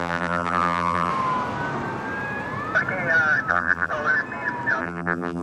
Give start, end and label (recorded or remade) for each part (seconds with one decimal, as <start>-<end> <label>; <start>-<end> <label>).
0.0-1.1 remade; 1.1-3.5 recorded; 3.5-3.9 remade; 3.9-4.8 recorded; 4.8-5.4 remade